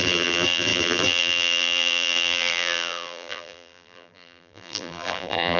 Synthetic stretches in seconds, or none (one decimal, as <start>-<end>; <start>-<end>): 0.0-5.6